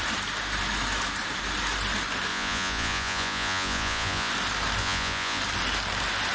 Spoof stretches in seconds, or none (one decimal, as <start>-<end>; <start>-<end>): 2.3-4.3; 4.8-5.4